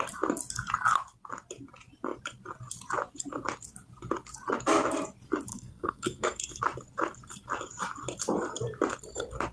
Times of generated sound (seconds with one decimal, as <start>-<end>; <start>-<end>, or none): 5.5-6.6